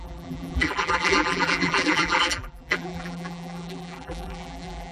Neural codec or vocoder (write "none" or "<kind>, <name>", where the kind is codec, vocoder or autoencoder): vocoder, BigVGAN v2